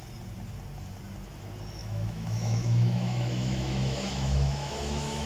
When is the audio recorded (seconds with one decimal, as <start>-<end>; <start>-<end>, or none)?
0.0-1.8